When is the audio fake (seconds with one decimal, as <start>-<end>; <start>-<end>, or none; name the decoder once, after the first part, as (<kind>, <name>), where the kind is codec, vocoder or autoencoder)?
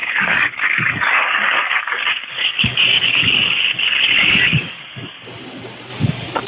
0.0-3.6 (codec, DAC); 4.2-5.1; 5.9-6.5